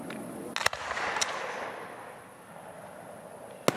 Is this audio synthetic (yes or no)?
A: no